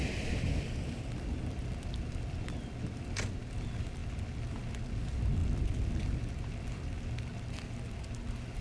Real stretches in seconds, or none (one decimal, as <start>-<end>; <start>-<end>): 0.0-8.6